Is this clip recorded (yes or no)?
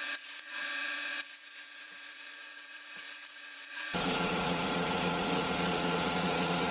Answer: no